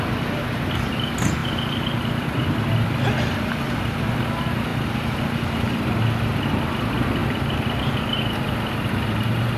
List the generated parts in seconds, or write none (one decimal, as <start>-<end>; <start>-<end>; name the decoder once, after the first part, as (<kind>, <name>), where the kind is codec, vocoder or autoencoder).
1.4-3.8 (vocoder, BigVGAN v2); 4.7-6.0; 7.2-8.1